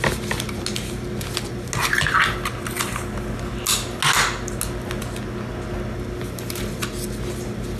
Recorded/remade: recorded